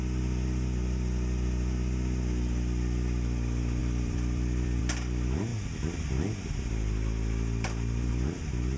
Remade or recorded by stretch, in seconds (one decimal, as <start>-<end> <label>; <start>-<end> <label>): 0.0-3.8 recorded; 3.8-4.8 remade; 4.8-8.8 recorded